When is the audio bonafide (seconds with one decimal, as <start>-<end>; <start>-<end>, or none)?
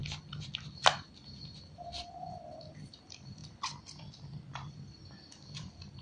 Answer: 0.0-3.0; 3.4-4.4